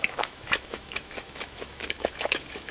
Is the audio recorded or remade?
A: remade